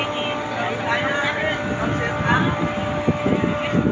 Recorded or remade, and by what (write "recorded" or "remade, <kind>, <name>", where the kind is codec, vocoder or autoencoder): recorded